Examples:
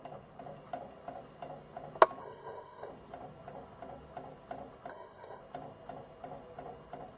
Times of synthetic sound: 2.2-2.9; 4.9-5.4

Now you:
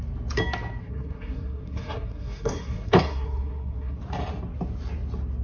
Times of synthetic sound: 0.8-4.0

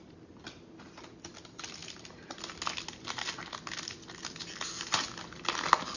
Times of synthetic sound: none

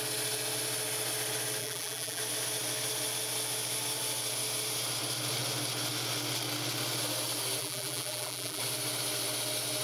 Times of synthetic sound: 1.6-2.2; 7.6-8.6

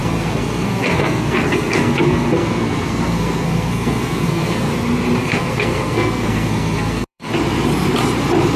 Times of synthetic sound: 0.0-4.7; 5.2-7.3

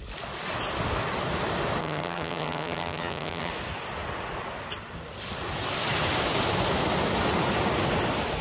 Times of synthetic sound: 1.8-3.5

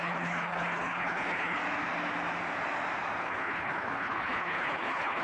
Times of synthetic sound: 0.0-1.6; 3.2-5.2

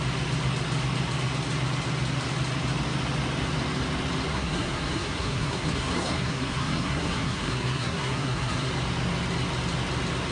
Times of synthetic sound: 4.3-8.7